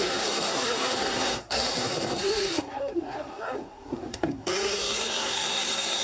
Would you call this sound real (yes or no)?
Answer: no